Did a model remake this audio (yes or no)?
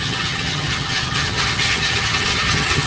yes